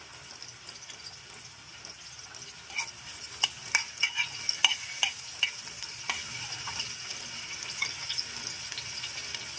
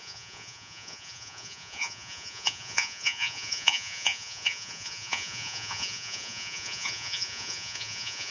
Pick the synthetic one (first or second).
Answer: second